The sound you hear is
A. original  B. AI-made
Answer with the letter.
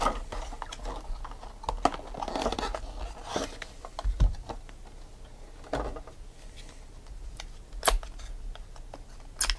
A